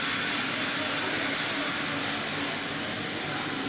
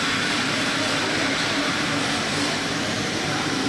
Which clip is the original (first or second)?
first